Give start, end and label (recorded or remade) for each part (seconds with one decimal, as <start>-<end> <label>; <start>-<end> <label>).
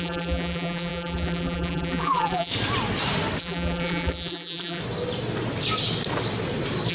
0.0-2.5 remade; 2.5-3.4 recorded; 3.4-4.8 remade; 4.8-6.9 recorded